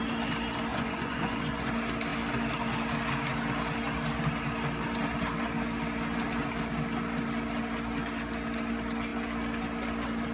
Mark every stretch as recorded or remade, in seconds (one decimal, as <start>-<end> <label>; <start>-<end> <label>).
0.0-0.7 recorded; 0.7-1.7 remade; 1.7-10.3 recorded